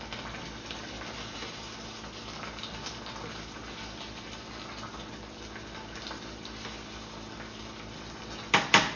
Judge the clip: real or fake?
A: real